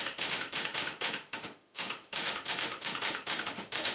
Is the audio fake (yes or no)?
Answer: yes